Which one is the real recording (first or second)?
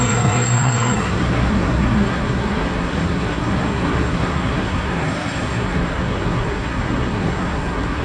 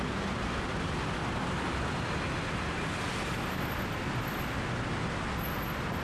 second